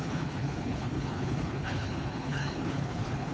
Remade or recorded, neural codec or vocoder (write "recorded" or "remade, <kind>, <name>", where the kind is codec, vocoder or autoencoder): remade, codec, HILCodec